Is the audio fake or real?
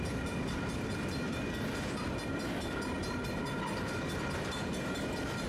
fake